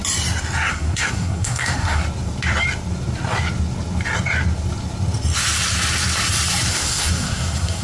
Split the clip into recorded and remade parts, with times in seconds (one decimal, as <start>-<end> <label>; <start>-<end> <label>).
0.0-0.7 recorded; 0.7-2.0 remade; 2.0-6.7 recorded; 6.7-7.8 remade